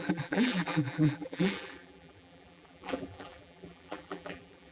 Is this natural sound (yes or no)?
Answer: no